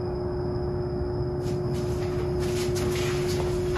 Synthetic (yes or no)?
no